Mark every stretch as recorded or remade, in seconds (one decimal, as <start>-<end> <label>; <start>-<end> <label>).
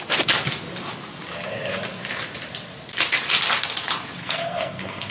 0.0-4.2 recorded; 4.2-5.1 remade